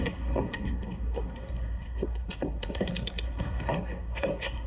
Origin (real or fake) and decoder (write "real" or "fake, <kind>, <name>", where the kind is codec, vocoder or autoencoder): fake, codec, SNAC